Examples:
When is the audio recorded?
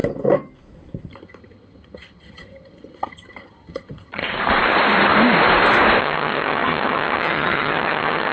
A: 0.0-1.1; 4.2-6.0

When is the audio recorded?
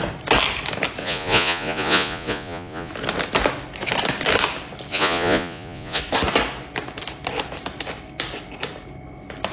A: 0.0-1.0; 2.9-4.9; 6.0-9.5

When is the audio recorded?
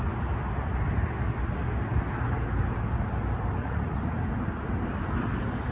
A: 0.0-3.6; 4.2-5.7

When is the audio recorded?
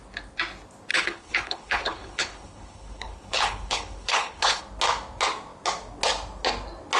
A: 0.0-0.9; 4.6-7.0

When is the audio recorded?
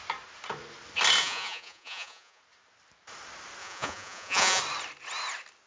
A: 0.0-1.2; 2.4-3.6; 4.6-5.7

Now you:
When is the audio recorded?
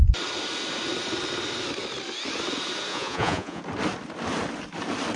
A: 0.0-2.9; 3.6-5.2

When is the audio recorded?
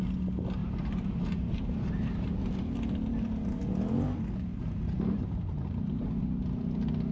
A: 0.0-0.6; 3.6-4.5; 6.1-7.1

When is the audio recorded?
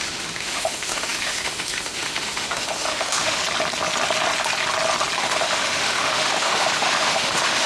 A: 3.4-5.2